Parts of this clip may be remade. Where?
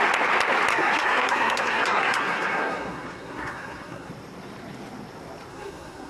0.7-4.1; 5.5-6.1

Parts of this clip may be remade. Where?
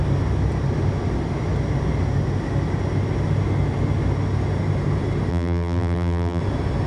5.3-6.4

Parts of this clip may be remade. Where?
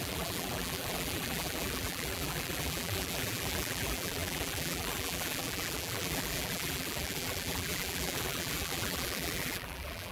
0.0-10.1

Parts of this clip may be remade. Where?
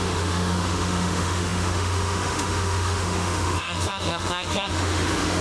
0.0-5.4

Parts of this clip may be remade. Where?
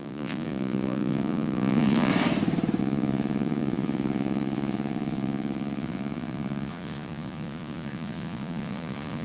0.0-2.1; 2.8-9.2